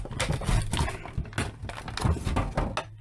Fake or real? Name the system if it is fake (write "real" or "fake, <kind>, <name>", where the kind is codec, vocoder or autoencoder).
real